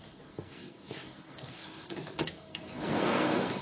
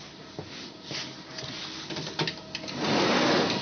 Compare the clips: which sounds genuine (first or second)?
second